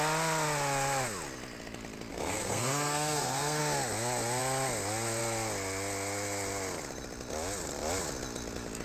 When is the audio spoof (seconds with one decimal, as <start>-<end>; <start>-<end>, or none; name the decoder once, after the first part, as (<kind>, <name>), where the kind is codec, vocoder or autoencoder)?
2.1-3.6 (codec, SNAC)

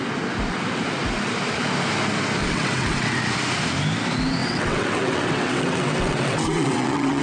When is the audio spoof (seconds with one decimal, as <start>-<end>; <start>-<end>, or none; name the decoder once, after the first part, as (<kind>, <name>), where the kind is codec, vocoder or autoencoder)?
2.4-3.2 (vocoder, WaveNeXt); 4.4-7.2